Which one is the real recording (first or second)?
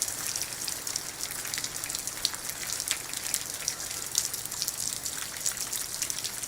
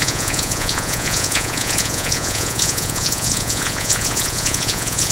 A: first